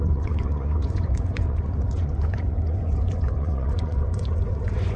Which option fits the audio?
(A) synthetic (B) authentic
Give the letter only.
A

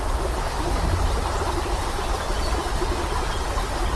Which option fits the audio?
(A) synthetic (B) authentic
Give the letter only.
B